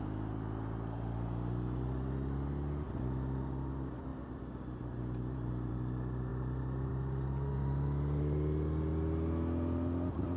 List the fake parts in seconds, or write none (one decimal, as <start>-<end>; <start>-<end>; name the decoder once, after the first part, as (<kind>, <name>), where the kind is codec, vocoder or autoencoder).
none